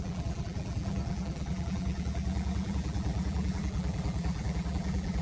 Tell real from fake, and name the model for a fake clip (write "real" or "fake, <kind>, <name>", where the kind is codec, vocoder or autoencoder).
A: fake, vocoder, BigVGAN v2